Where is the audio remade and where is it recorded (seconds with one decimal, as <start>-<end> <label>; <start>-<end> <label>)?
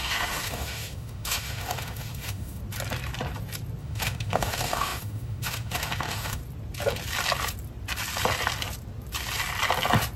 0.0-2.6 remade; 2.6-3.8 recorded; 3.8-6.4 remade; 6.4-10.2 recorded